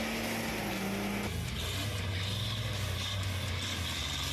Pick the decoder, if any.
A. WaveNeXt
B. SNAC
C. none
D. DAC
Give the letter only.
C